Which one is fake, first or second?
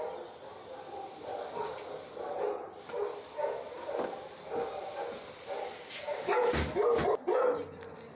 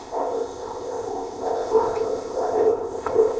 second